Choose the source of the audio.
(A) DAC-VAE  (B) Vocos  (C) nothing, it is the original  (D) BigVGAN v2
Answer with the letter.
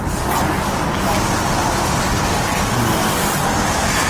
C